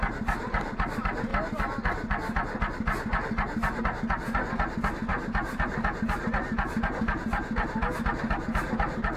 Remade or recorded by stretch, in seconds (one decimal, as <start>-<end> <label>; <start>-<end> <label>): 0.0-9.2 recorded